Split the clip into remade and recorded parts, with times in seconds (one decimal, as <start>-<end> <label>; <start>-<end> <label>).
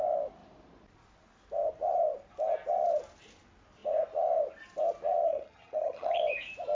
0.0-5.3 recorded; 5.3-6.2 remade; 6.2-6.7 recorded